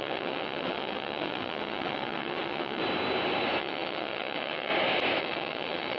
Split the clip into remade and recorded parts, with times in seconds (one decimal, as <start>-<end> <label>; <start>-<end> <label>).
0.0-2.8 remade; 2.8-3.6 recorded; 3.6-4.7 remade; 4.7-5.2 recorded; 5.2-6.0 remade